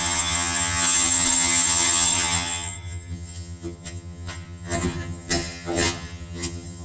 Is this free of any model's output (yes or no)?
no